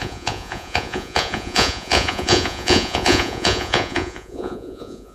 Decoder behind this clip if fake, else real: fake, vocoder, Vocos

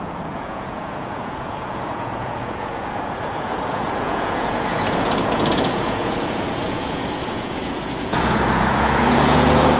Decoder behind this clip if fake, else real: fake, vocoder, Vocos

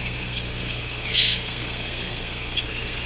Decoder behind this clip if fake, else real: fake, codec, SNAC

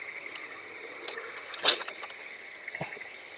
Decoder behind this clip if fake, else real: fake, vocoder, HiFi-GAN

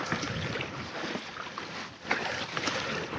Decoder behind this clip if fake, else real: real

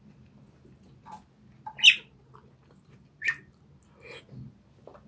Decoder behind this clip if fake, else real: real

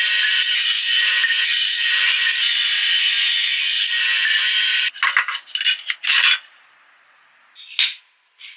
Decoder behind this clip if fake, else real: real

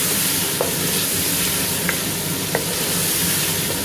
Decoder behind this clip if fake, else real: real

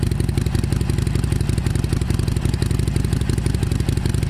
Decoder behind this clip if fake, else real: real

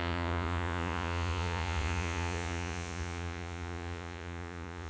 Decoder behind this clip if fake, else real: fake, vocoder, Vocos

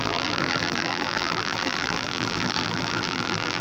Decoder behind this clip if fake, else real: fake, vocoder, BigVGAN v2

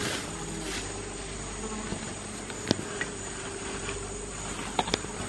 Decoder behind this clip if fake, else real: fake, vocoder, BigVGAN v2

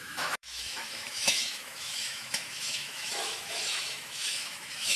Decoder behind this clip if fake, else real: fake, autoencoder, DAC-VAE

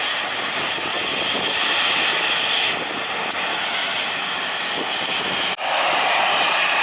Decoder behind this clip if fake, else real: real